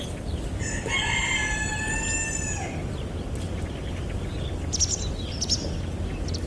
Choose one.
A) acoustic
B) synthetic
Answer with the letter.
A